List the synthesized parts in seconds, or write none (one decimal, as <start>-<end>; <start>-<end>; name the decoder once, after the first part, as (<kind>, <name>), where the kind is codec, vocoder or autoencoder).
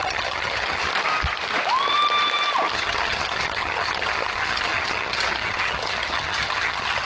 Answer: 0.0-0.9 (vocoder, HiFi-GAN); 2.7-7.1